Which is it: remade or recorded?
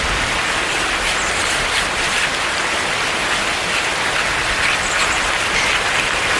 recorded